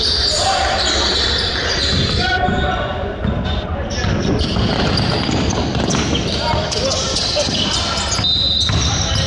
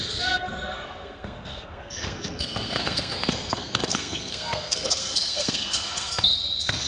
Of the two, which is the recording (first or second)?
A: first